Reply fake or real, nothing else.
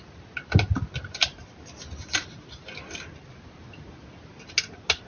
real